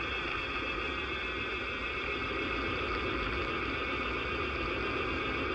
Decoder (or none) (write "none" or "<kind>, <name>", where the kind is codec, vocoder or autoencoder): none